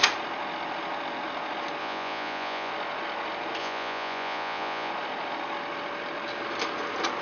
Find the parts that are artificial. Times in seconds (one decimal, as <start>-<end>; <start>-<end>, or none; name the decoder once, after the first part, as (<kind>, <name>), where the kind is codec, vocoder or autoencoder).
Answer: 1.8-2.7 (vocoder, Vocos); 3.6-4.9